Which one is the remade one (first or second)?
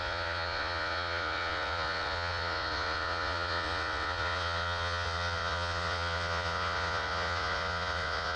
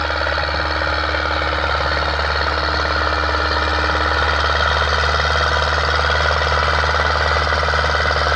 first